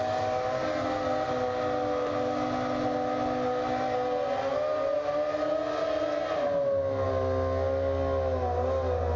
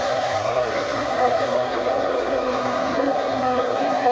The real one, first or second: first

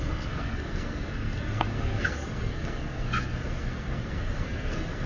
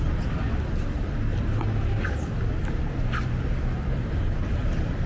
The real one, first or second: second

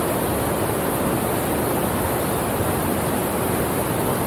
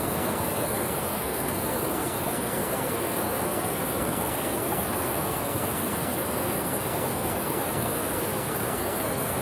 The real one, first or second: first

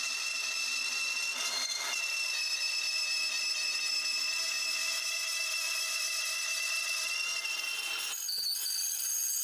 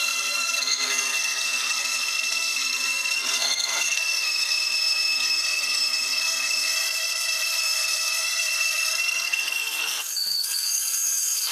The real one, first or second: first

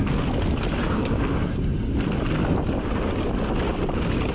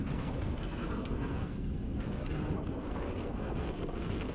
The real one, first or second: first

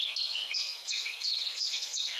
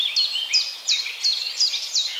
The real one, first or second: second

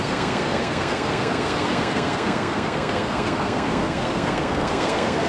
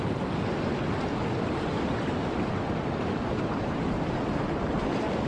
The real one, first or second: second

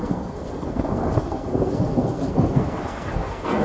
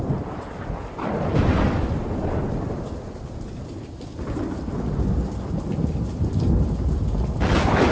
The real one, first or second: second